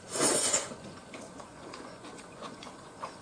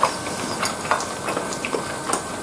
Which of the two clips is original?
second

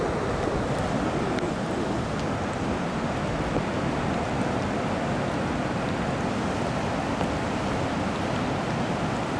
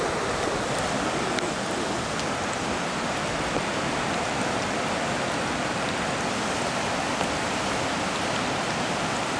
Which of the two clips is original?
first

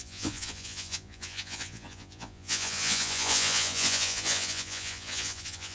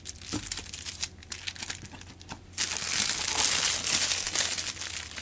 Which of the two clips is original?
second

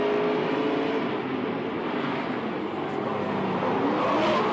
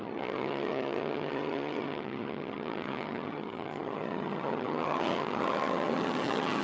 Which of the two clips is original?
first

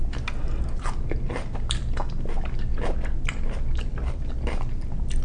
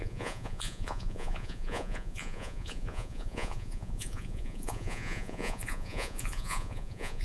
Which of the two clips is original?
first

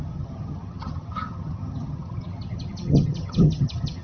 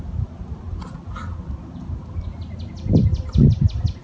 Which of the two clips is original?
second